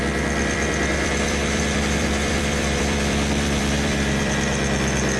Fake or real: fake